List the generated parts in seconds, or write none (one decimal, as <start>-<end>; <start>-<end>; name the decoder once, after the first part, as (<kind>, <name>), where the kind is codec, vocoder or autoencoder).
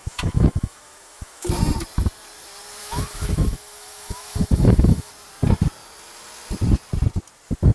0.0-1.5 (autoencoder, DAC-VAE); 2.8-5.1